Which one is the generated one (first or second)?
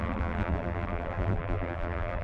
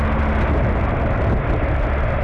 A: first